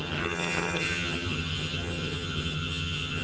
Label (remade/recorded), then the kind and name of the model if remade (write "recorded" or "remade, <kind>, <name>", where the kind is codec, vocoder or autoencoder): remade, vocoder, HiFi-GAN